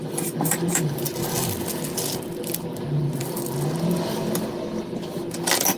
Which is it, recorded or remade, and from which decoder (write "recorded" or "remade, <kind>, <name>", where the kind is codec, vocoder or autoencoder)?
recorded